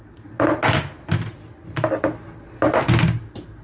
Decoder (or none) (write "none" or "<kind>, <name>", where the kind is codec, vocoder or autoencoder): none